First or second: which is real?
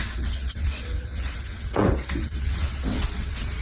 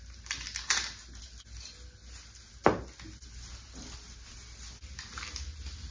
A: second